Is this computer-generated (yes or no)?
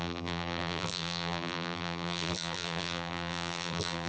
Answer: yes